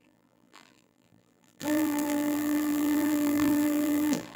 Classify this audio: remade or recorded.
remade